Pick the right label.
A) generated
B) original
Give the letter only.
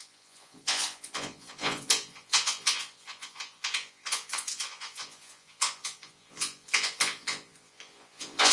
A